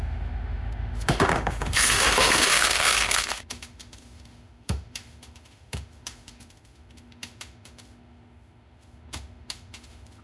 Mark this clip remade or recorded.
remade